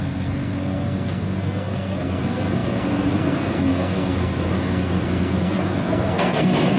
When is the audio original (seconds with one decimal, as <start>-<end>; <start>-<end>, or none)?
none